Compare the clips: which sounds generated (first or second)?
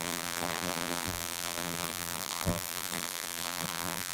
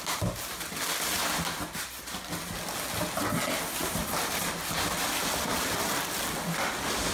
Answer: first